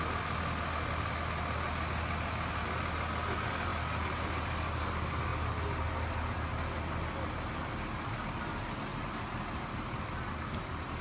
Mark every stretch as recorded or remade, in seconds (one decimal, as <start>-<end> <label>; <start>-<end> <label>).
0.0-11.0 recorded